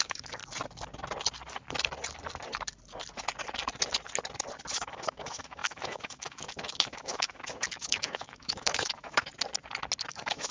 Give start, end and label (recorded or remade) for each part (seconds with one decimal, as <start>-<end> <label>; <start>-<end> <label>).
0.0-0.4 remade; 0.4-4.7 recorded; 4.7-9.3 remade; 9.3-10.1 recorded; 10.1-10.5 remade